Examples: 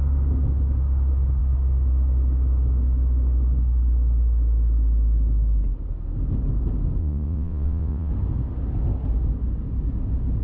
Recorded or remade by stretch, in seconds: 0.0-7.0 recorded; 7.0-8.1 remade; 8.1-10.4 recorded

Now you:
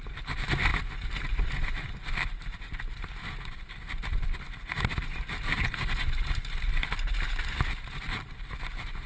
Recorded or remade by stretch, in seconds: 0.0-9.1 recorded